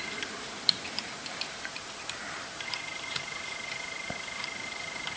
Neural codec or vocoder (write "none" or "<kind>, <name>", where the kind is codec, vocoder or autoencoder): vocoder, BigVGAN v2